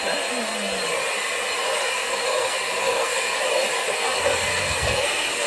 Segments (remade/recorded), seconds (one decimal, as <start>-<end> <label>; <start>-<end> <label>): 0.0-1.8 recorded; 1.8-3.3 remade; 3.3-3.8 recorded; 3.8-5.5 remade